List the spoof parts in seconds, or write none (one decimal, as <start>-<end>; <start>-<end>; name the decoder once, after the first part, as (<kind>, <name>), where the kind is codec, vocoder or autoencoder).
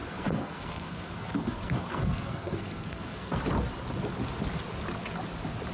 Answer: 0.0-3.4 (codec, SNAC)